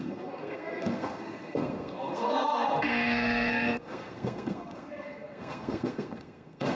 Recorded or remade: remade